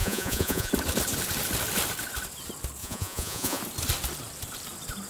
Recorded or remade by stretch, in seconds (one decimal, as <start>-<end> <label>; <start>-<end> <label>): 0.0-0.7 remade; 0.7-2.8 recorded; 2.8-3.6 remade; 3.6-5.1 recorded